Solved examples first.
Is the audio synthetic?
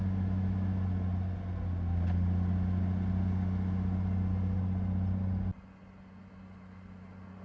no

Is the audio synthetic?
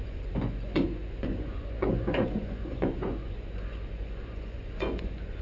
yes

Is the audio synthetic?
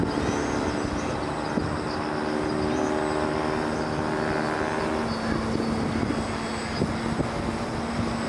no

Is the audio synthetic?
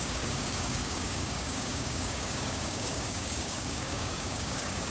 yes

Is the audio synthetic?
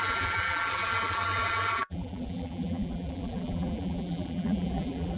yes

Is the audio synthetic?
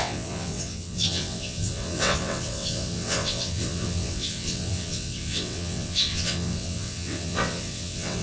yes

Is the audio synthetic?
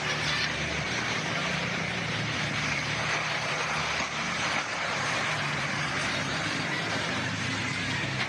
yes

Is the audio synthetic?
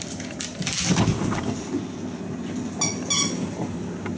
no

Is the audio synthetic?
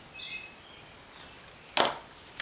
no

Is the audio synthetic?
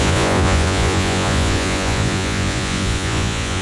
yes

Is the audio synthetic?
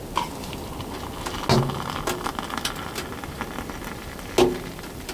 no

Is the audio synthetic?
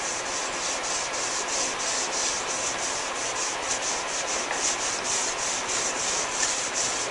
no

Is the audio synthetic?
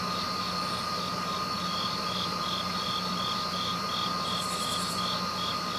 no